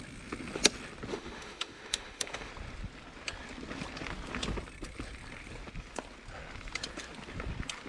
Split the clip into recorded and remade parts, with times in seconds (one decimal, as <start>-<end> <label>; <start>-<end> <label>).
0.0-1.1 recorded; 1.1-2.5 remade; 2.5-7.9 recorded